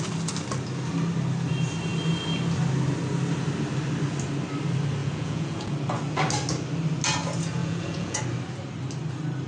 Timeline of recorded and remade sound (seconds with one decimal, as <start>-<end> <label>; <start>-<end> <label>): 0.0-5.0 recorded; 5.0-5.7 remade; 5.7-7.6 recorded; 7.6-8.2 remade; 8.2-9.5 recorded

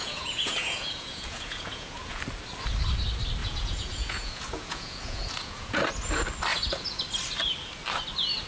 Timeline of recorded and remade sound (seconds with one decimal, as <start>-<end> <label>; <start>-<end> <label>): 0.0-2.2 remade; 2.2-3.4 recorded; 3.4-5.8 remade; 5.8-6.5 recorded; 6.5-7.0 remade; 7.0-8.5 recorded

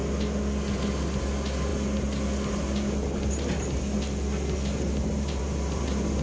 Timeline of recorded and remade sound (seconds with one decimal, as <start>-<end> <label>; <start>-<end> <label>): 0.0-6.2 recorded

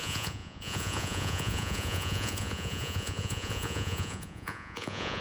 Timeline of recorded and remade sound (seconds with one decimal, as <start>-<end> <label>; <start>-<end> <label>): 0.0-5.2 remade